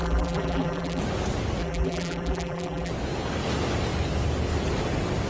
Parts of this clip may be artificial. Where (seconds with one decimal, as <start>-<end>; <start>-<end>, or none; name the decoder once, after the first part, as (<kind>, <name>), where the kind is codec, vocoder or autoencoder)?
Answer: 0.0-1.0 (vocoder, BigVGAN v2); 1.6-2.9